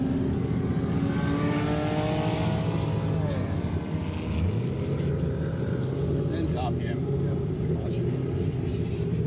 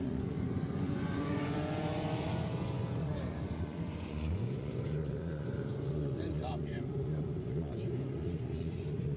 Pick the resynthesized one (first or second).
second